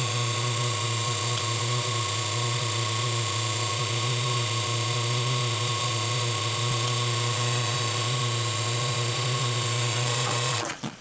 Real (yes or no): no